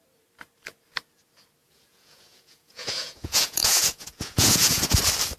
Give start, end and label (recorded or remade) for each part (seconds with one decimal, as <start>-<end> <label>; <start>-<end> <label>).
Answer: 0.0-1.6 recorded; 1.6-4.8 remade; 4.8-5.4 recorded